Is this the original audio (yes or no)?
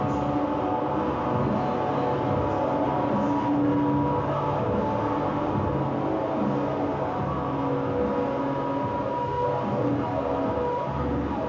yes